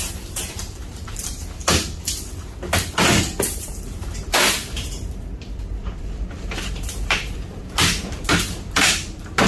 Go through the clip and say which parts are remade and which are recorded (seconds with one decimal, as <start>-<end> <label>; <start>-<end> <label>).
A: 0.0-1.6 remade; 1.6-3.5 recorded; 3.5-9.5 remade